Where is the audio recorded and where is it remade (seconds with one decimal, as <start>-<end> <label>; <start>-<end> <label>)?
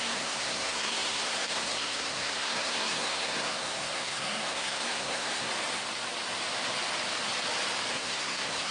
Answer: 0.0-5.5 remade; 5.5-7.9 recorded; 7.9-8.7 remade